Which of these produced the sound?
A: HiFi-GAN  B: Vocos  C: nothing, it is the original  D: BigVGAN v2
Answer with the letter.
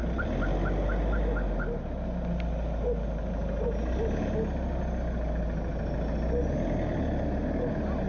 C